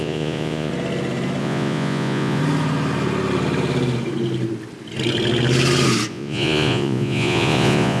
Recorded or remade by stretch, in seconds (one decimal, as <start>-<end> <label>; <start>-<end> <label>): 0.0-0.7 remade; 0.7-1.4 recorded; 1.4-2.4 remade; 2.4-6.1 recorded; 6.1-8.0 remade